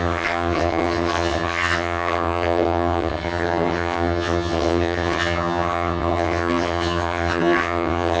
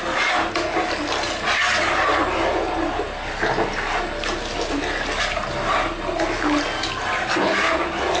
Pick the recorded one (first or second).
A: second